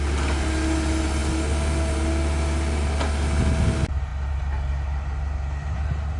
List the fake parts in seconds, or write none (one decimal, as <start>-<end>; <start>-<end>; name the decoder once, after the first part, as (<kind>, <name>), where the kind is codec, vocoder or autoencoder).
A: none